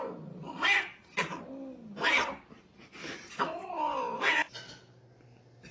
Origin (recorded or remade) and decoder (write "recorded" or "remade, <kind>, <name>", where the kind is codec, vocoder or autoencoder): recorded